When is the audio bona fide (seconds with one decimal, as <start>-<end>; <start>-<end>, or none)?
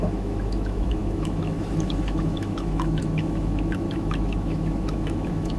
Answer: none